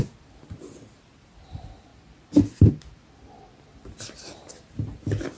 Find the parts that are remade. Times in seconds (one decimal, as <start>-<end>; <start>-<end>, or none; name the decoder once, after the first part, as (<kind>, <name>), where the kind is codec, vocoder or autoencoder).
none